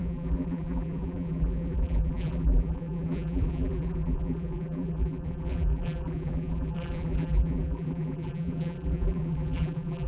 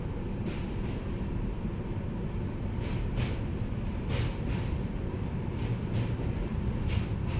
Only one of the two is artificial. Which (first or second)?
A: first